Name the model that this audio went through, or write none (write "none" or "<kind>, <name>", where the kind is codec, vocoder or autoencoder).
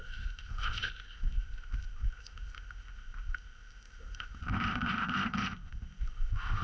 codec, ZipCodec